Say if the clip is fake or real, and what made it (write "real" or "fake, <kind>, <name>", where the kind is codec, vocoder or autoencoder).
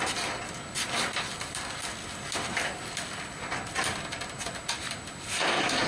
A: real